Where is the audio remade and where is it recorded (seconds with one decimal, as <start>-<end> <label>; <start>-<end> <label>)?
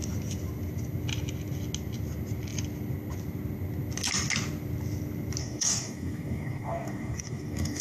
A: 0.0-5.4 recorded; 5.4-7.8 remade